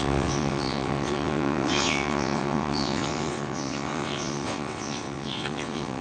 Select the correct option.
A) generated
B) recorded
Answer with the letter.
A